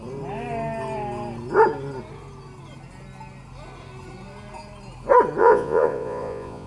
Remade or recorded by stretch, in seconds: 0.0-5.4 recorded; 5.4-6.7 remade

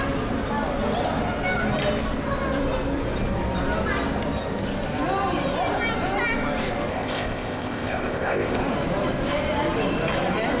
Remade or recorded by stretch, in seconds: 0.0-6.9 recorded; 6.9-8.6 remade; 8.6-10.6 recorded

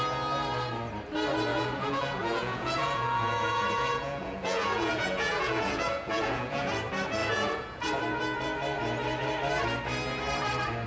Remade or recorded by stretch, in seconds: 0.0-1.5 recorded; 1.5-6.7 remade; 6.7-7.2 recorded; 7.2-7.9 remade; 7.9-10.9 recorded

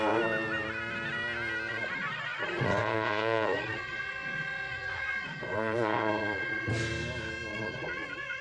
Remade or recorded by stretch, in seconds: 0.0-1.7 recorded; 1.7-6.7 remade; 6.7-7.5 recorded; 7.5-8.4 remade

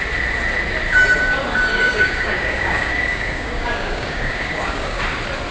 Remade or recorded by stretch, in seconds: 0.0-1.7 recorded; 1.7-5.0 remade; 5.0-5.5 recorded